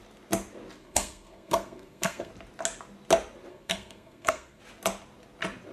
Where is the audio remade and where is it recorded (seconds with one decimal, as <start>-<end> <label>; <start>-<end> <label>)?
0.0-0.8 recorded; 0.8-2.3 remade; 2.3-3.5 recorded; 3.5-4.6 remade; 4.6-5.7 recorded